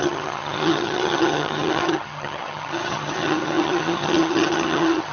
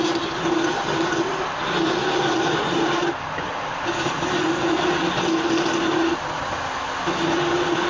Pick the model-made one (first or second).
first